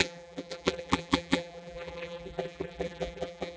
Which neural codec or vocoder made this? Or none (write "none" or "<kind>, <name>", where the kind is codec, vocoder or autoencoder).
vocoder, BigVGAN v2